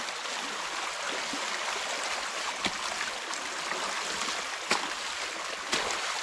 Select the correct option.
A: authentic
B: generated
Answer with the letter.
A